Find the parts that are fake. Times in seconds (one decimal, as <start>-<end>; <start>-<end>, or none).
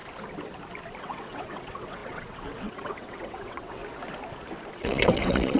1.0-3.8; 4.7-5.6